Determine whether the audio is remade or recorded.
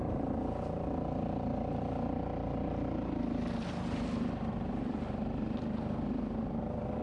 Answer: recorded